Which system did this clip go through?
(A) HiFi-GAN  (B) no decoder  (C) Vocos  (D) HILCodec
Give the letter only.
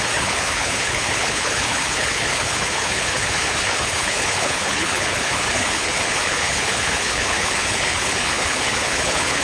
D